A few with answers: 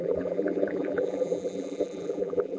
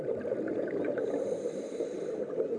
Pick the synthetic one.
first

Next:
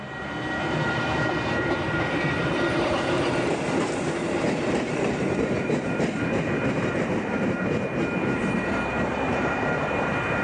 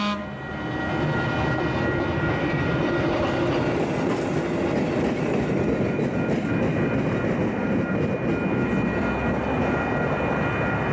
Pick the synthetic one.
first